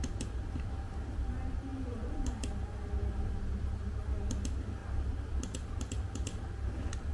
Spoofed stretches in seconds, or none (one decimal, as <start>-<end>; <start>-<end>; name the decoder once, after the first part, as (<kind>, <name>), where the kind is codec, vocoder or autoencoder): none